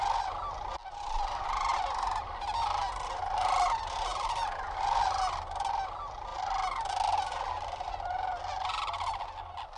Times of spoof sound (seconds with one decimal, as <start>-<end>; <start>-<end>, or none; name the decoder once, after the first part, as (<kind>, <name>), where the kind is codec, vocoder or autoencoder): 1.7-2.3 (vocoder, BigVGAN v2); 4.1-5.2

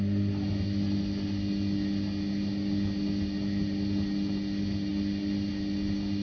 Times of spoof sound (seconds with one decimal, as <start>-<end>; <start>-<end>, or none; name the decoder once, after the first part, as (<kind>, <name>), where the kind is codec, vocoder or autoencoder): none

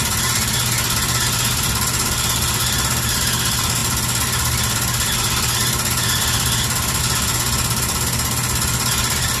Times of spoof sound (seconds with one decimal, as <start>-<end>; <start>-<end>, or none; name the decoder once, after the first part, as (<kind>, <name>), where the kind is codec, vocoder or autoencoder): none

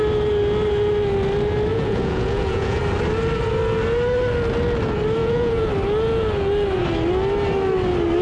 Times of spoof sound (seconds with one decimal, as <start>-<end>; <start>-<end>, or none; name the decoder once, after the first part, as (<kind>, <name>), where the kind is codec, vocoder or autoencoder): 1.7-2.8 (vocoder, Vocos); 5.2-5.7

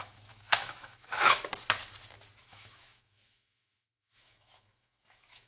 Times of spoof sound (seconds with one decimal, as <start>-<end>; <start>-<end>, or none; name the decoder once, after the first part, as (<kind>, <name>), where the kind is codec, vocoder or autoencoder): 0.0-1.5 (autoencoder, DAC-VAE); 2.4-5.5

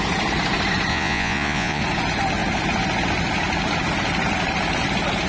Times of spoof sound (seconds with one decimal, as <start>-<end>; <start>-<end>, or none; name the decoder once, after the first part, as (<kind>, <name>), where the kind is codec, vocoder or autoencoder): 0.9-1.8 (vocoder, Vocos)